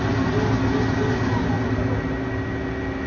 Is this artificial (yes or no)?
no